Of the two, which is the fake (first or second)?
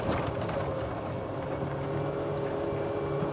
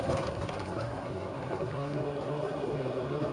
second